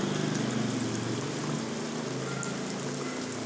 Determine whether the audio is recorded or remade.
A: recorded